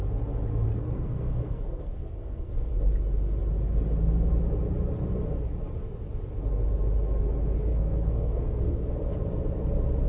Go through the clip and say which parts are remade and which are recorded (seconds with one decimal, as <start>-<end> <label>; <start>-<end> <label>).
0.0-0.7 recorded; 0.7-2.7 remade; 2.7-7.7 recorded; 7.7-8.9 remade; 8.9-10.1 recorded